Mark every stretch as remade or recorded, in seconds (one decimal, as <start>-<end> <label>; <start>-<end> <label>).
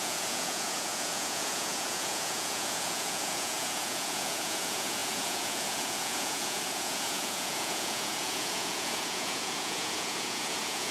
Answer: 0.0-10.9 remade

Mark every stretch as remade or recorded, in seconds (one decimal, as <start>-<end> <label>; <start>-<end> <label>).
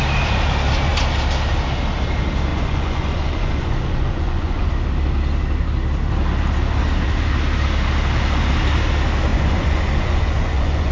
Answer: 0.0-2.5 recorded; 2.5-4.7 remade; 4.7-9.3 recorded; 9.3-10.9 remade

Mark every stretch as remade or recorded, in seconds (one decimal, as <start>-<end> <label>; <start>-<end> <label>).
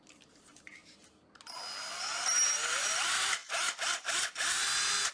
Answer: 0.0-0.8 remade; 0.8-1.9 recorded; 1.9-3.4 remade; 3.4-5.1 recorded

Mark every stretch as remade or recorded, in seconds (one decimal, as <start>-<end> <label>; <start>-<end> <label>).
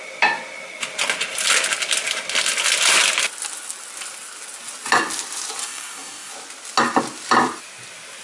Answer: 0.0-5.6 recorded; 5.6-6.3 remade; 6.3-8.2 recorded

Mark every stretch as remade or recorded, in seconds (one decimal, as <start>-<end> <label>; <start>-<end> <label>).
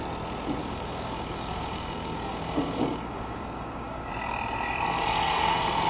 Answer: 0.0-0.6 recorded; 0.6-4.1 remade; 4.1-5.9 recorded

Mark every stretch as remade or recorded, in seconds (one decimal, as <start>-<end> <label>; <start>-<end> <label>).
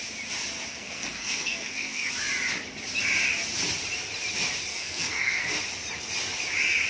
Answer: 0.0-0.7 recorded; 0.7-2.1 remade; 2.1-4.7 recorded; 4.7-5.6 remade; 5.6-6.9 recorded